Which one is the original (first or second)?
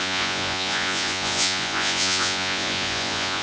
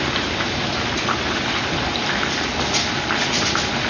second